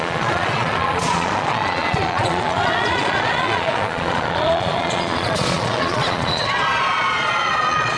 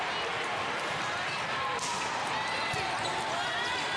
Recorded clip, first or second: second